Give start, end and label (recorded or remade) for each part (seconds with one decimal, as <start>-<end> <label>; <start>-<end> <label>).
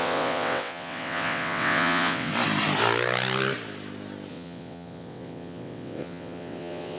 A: 0.0-2.3 remade; 2.3-4.3 recorded; 4.3-7.0 remade